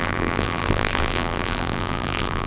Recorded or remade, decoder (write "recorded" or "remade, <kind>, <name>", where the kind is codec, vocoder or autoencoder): remade, vocoder, BigVGAN v2